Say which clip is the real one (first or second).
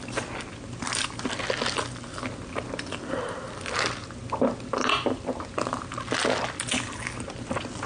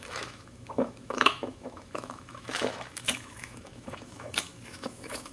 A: first